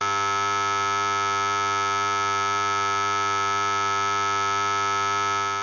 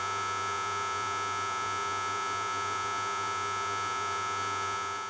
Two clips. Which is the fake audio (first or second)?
second